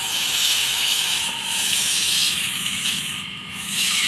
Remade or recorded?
remade